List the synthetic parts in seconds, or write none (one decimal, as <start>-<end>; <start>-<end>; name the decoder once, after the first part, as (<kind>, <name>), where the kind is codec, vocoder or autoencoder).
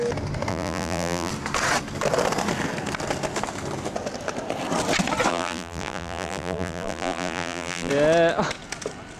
0.5-1.3 (vocoder, BigVGAN v2); 5.3-7.9